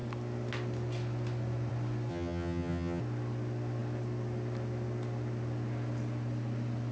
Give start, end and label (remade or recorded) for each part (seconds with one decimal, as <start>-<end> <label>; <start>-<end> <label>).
0.0-2.1 recorded; 2.1-3.0 remade; 3.0-6.9 recorded